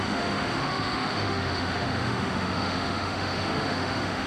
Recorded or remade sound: remade